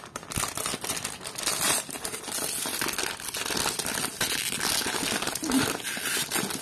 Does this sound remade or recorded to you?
recorded